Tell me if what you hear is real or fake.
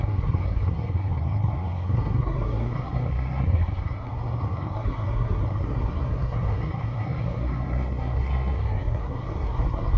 fake